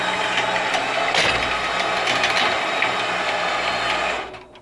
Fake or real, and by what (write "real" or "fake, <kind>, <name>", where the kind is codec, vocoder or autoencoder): real